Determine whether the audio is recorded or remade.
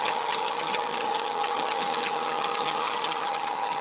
remade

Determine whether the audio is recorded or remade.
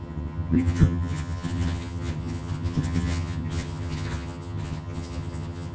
remade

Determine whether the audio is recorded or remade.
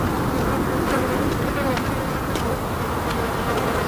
recorded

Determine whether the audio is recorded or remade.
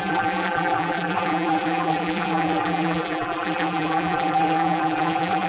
remade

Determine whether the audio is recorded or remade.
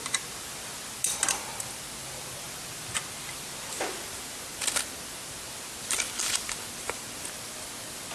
recorded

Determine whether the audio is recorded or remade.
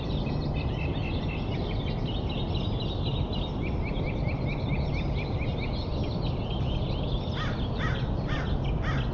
recorded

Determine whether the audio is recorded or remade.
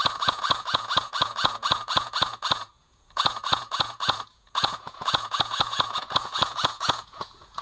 remade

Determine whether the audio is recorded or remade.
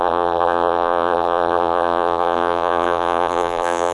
remade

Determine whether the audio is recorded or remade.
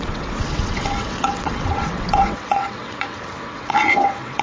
remade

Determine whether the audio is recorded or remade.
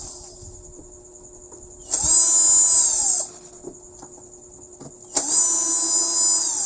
recorded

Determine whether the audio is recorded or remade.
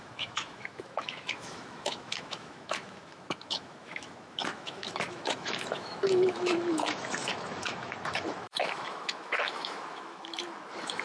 remade